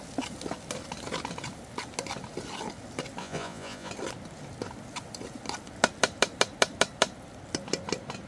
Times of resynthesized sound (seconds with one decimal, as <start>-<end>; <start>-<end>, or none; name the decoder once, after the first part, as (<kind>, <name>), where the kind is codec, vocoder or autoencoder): 3.2-3.9 (vocoder, Vocos)